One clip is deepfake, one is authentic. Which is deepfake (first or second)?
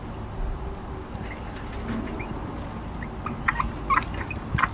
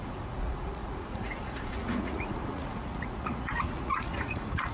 second